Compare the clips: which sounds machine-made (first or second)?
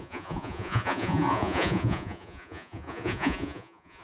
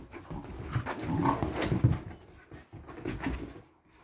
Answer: first